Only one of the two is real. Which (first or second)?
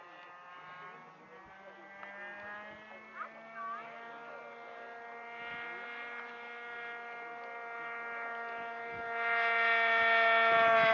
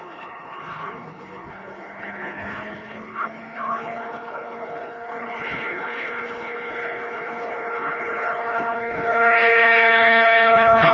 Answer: first